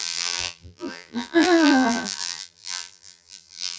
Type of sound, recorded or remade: remade